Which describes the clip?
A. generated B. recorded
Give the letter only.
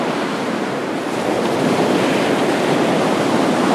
B